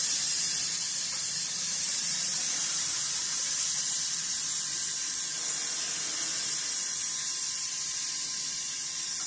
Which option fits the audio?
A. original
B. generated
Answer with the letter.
A